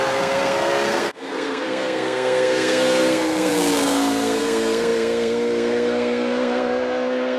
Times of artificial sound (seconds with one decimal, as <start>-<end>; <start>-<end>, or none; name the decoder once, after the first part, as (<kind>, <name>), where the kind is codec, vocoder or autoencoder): 0.0-7.4 (codec, SNAC)